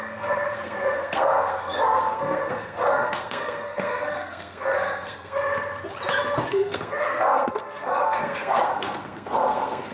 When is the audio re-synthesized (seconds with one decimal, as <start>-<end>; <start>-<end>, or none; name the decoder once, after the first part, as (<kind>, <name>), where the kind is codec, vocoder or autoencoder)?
0.0-5.5 (codec, SNAC); 6.5-9.9